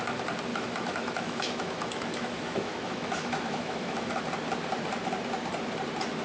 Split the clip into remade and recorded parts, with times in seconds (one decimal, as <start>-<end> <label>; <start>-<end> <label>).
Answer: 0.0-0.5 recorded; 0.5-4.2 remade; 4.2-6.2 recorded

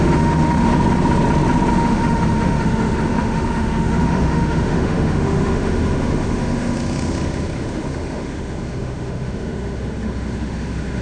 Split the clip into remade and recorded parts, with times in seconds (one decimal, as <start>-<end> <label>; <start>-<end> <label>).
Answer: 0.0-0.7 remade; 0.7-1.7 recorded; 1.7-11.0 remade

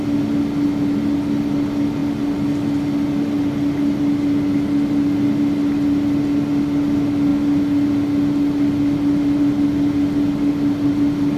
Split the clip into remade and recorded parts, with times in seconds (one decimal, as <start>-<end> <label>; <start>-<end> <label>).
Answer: 0.0-11.4 recorded